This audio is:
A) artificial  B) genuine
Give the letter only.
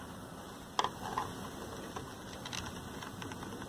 B